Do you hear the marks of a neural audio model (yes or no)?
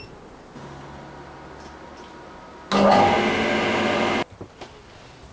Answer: no